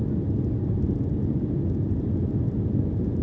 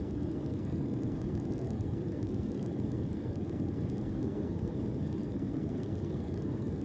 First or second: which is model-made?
second